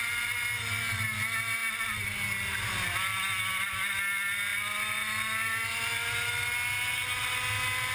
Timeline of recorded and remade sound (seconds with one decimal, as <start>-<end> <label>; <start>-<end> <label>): 0.0-7.9 recorded